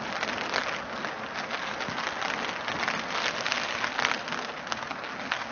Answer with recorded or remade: recorded